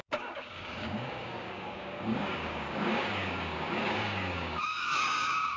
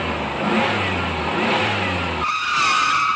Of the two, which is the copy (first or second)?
first